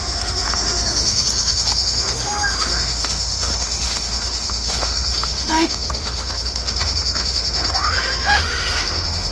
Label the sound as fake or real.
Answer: fake